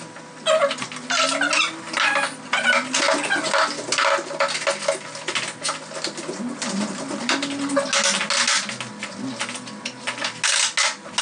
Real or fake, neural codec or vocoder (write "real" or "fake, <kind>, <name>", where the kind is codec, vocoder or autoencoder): real